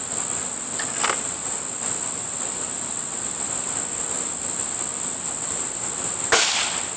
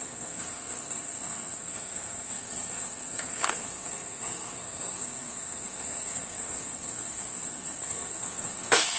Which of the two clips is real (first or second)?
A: first